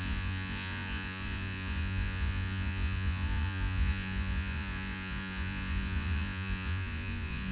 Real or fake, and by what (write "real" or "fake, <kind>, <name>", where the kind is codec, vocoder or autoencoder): fake, vocoder, Vocos